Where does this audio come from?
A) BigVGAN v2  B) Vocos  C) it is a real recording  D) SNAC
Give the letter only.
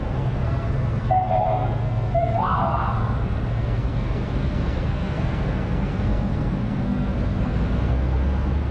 D